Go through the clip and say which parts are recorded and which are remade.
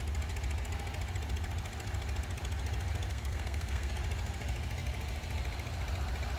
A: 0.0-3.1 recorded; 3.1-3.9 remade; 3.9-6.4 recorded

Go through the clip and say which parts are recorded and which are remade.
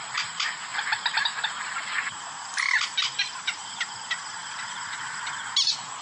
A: 0.0-6.0 recorded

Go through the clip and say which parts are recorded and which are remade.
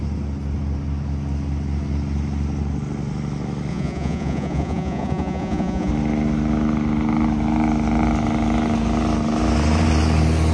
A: 0.0-3.7 recorded; 3.7-5.9 remade; 5.9-10.5 recorded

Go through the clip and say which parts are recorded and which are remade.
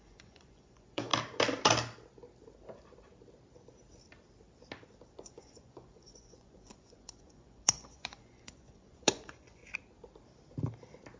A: 0.0-1.1 remade; 1.1-5.1 recorded; 5.1-9.6 remade; 9.6-11.2 recorded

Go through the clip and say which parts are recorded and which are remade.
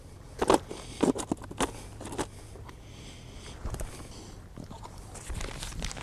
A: 0.0-6.0 recorded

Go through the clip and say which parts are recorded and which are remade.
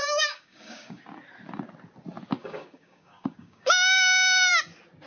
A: 0.0-1.0 remade; 1.0-2.4 recorded; 2.4-4.5 remade; 4.5-5.1 recorded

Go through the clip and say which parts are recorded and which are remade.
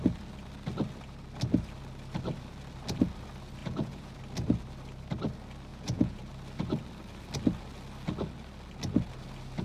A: 0.0-3.6 recorded; 3.6-4.2 remade; 4.2-5.7 recorded; 5.7-6.3 remade; 6.3-9.6 recorded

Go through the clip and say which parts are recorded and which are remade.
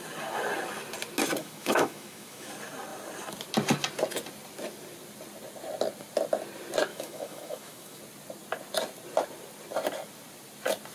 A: 0.0-1.4 recorded; 1.4-2.5 remade; 2.5-6.9 recorded; 6.9-8.0 remade; 8.0-10.9 recorded